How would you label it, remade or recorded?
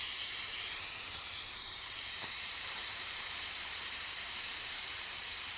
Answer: remade